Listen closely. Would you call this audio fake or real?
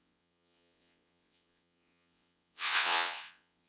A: fake